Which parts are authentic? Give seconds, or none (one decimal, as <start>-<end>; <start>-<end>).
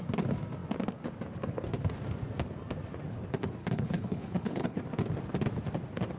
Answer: 0.0-3.6; 4.8-6.2